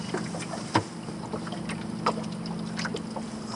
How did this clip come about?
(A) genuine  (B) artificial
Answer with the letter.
A